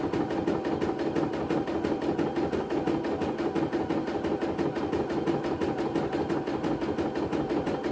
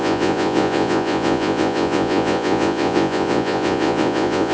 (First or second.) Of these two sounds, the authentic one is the first